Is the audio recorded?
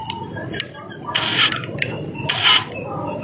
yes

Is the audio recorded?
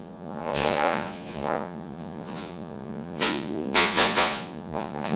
no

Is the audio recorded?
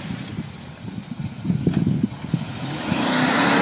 yes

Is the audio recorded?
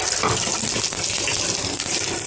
yes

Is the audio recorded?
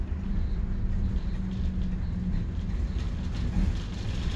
yes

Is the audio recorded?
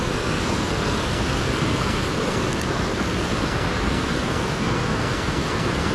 no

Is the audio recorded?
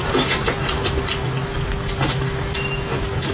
yes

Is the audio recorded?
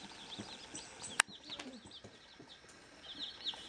yes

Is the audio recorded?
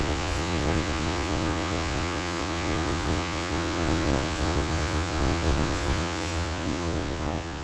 no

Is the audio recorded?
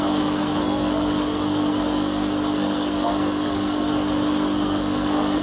no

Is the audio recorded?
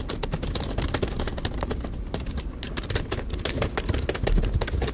yes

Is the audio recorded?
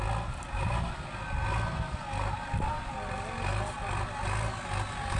yes